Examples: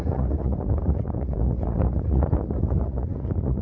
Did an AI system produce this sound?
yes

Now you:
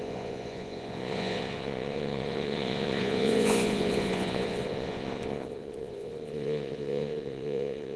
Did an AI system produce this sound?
yes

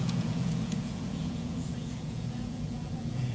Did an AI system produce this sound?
yes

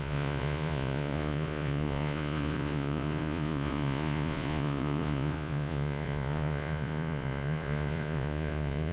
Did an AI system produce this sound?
yes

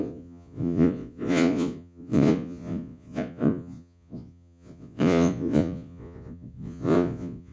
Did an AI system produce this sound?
yes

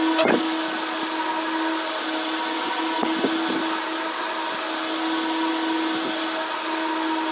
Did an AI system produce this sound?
no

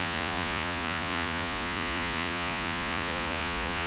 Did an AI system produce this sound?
yes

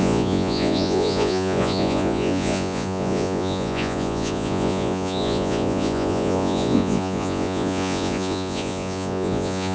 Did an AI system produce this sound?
yes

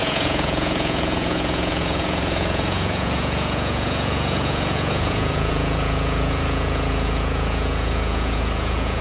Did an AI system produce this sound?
yes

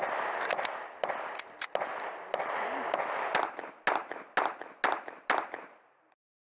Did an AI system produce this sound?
no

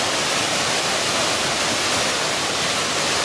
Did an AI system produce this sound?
no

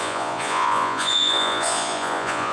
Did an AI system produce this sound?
yes